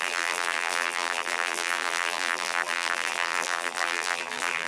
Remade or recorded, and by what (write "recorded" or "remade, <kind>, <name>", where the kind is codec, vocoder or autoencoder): remade, vocoder, BigVGAN v2